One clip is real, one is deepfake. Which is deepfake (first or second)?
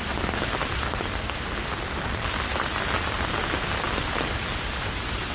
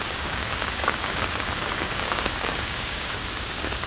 second